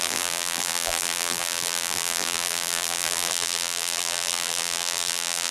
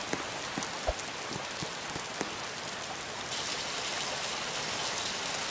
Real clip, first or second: second